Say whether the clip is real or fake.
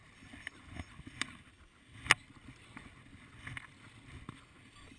real